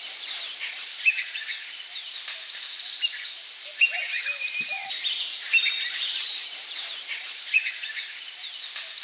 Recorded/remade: remade